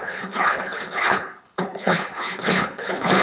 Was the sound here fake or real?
fake